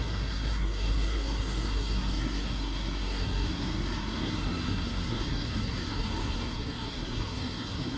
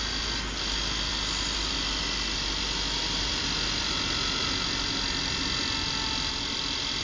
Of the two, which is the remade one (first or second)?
first